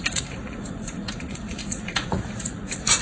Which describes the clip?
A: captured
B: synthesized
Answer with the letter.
B